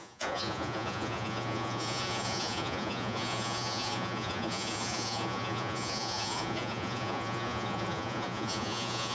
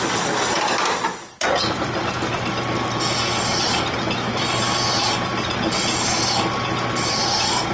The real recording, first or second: second